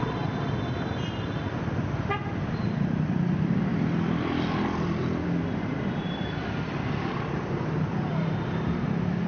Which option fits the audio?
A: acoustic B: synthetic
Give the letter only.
B